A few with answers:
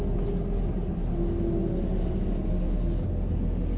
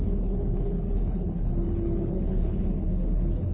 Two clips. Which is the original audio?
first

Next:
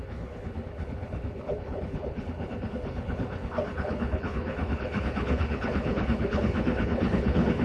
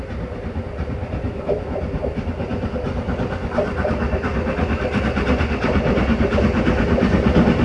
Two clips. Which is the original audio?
second